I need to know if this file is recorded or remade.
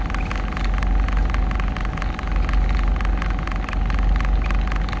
recorded